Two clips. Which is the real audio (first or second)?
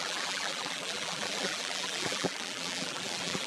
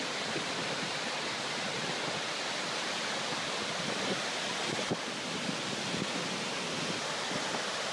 second